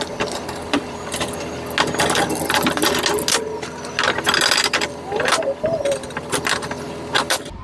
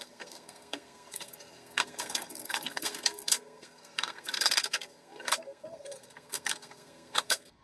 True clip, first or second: first